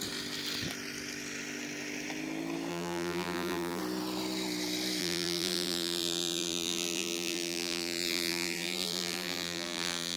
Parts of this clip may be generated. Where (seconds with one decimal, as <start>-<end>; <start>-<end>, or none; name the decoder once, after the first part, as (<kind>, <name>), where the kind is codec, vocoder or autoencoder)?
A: 2.7-3.8 (vocoder, BigVGAN v2); 5.0-10.2